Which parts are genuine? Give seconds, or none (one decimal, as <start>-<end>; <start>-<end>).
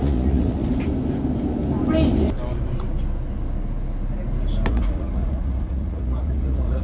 0.6-4.7